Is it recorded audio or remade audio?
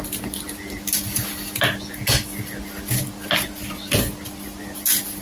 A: recorded